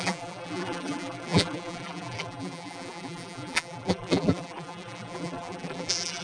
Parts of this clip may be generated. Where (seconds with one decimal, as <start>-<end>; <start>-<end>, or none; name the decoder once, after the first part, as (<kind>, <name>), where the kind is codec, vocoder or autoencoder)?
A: 0.0-6.2 (vocoder, BigVGAN v2)